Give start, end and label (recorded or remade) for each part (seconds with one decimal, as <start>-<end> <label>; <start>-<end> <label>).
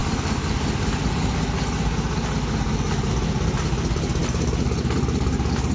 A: 0.0-5.7 recorded